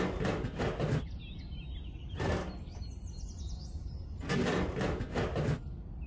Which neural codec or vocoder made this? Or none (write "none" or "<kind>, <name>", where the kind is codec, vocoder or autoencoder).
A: none